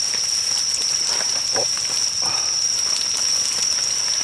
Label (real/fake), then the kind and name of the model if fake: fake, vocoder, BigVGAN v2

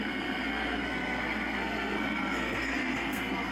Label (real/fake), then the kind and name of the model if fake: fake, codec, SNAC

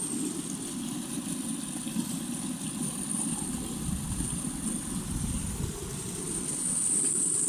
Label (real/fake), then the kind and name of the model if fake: real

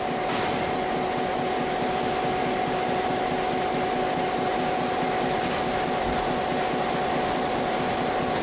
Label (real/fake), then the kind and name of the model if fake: real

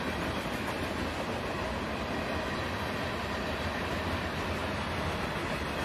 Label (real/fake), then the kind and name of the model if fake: real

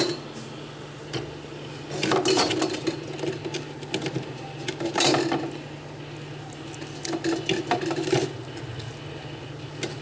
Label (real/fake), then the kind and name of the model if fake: real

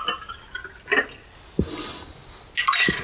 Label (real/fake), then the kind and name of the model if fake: real